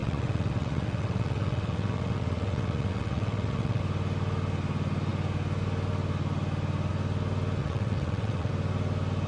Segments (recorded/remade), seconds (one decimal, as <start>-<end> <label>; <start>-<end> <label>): 0.0-3.8 remade; 3.8-7.6 recorded; 7.6-8.5 remade; 8.5-9.3 recorded